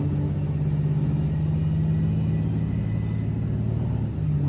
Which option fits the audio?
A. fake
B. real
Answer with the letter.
B